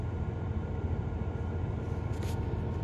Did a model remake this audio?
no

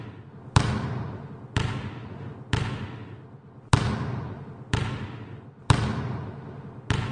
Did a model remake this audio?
no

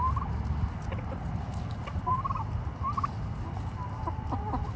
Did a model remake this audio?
no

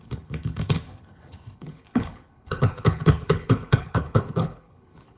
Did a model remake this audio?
yes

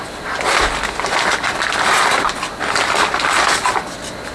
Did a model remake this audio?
no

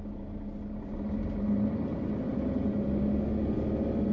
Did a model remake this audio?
no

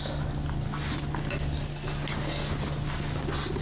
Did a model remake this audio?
no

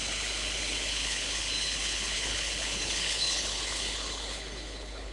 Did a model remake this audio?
yes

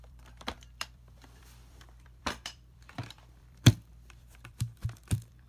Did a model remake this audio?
yes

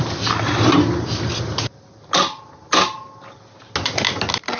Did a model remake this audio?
no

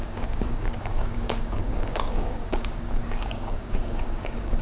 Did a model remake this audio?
yes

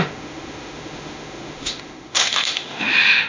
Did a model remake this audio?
yes